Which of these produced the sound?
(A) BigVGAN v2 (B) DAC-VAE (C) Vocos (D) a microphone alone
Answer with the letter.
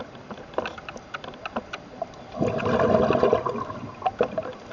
D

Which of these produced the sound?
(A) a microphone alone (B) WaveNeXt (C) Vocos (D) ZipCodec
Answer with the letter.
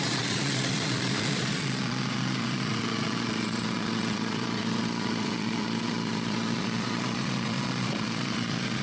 C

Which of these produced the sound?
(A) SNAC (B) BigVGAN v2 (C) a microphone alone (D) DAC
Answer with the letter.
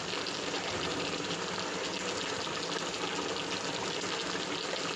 C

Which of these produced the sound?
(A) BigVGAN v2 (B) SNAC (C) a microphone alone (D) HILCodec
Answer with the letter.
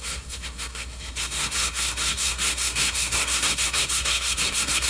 B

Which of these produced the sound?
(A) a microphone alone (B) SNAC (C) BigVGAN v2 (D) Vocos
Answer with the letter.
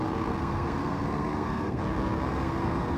B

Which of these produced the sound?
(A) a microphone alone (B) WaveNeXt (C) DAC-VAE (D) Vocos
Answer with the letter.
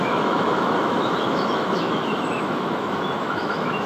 C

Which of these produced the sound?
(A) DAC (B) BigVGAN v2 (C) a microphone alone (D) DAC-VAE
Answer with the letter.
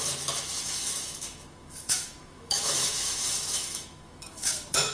D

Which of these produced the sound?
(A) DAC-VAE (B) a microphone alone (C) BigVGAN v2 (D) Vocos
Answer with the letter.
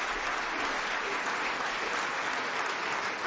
B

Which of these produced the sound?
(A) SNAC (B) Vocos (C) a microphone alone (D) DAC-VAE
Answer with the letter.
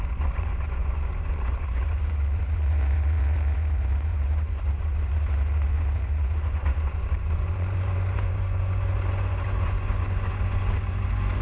B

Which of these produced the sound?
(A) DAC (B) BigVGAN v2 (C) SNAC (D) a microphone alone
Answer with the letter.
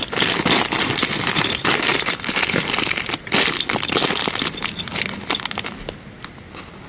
D